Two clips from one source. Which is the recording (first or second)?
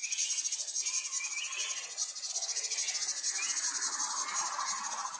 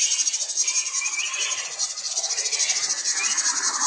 first